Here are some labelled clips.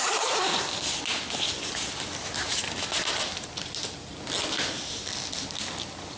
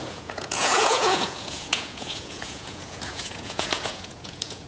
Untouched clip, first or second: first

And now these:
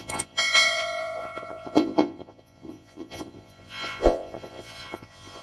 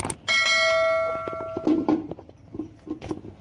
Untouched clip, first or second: second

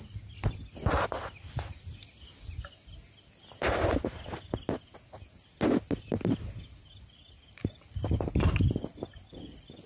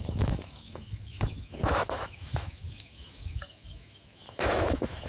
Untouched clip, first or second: first